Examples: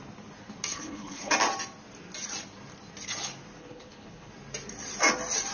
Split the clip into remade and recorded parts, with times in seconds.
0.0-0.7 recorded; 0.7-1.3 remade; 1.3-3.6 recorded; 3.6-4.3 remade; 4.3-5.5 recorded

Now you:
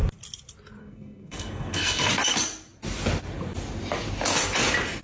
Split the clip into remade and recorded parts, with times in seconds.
0.0-0.8 recorded; 0.8-2.1 remade; 2.1-5.0 recorded

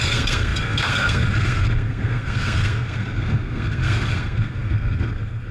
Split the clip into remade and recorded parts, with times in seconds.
0.0-5.5 remade

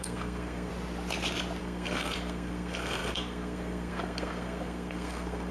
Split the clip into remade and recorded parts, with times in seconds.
0.0-0.7 remade; 0.7-1.6 recorded; 1.6-5.5 remade

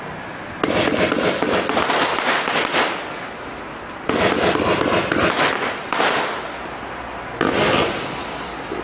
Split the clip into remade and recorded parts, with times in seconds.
0.0-8.8 recorded

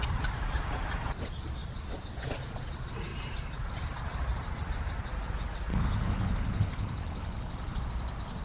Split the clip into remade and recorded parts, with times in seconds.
0.0-5.7 recorded; 5.7-7.8 remade; 7.8-8.4 recorded